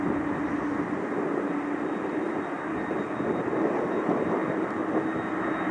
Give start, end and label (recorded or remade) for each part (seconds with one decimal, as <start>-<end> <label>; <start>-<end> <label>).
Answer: 0.0-5.7 recorded